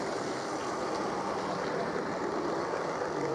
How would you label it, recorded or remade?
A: recorded